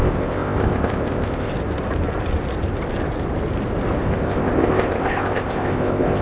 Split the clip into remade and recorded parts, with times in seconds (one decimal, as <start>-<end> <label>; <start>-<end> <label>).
0.0-1.5 remade; 1.5-4.0 recorded; 4.0-6.2 remade